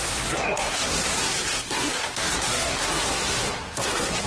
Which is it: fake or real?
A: fake